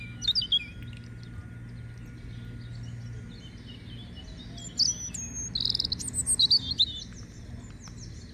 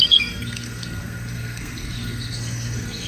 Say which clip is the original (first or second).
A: first